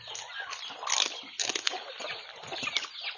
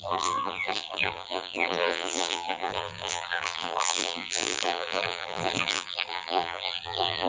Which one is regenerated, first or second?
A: second